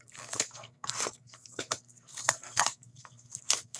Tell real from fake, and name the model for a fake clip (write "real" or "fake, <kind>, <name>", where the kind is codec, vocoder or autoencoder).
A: fake, codec, SNAC